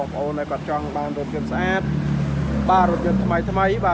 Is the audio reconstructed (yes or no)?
no